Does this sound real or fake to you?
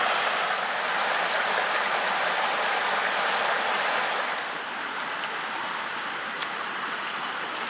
real